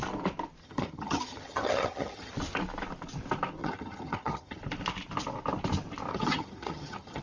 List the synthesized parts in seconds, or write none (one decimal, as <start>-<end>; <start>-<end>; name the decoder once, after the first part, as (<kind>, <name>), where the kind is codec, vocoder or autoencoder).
0.6-2.3 (vocoder, HiFi-GAN); 3.6-4.6; 6.1-7.2